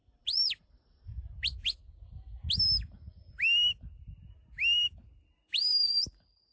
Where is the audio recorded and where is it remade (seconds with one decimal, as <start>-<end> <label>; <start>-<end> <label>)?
0.0-1.8 remade; 1.8-5.5 recorded; 5.5-6.5 remade